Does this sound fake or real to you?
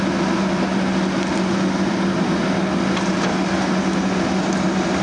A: real